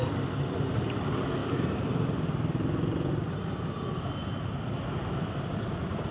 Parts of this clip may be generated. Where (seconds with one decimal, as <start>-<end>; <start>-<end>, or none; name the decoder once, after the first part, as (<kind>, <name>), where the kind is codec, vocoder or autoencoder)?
none